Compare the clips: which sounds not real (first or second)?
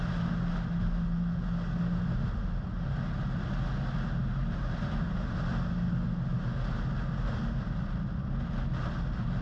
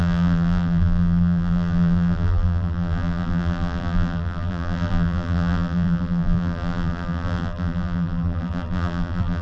second